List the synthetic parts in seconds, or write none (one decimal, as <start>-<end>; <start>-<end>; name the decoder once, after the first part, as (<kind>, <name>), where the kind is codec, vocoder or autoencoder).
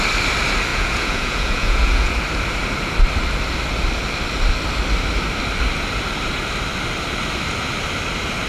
0.7-2.2 (vocoder, Vocos)